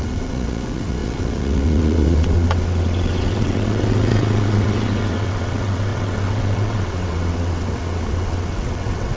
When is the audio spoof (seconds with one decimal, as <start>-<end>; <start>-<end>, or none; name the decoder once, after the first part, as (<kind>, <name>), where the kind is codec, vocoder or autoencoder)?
0.0-9.2 (vocoder, WaveNeXt)